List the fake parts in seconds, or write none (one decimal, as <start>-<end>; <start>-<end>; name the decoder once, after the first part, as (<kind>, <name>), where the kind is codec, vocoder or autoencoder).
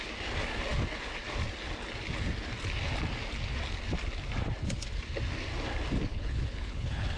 6.1-7.2 (codec, HILCodec)